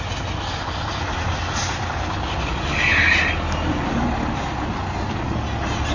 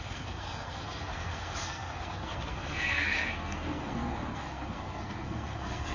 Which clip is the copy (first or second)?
second